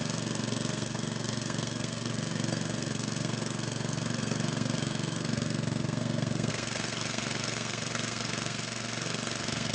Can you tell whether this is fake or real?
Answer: fake